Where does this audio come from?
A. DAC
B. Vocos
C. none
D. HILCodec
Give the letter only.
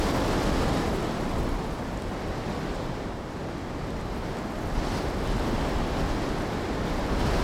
C